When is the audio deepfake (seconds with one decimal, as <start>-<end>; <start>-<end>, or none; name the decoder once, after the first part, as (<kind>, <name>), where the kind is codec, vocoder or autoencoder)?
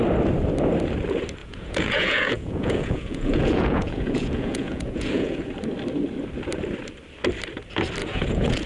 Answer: 1.4-5.5 (vocoder, Vocos); 8.0-8.7